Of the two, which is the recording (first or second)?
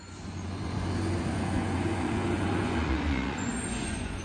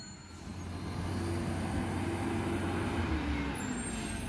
second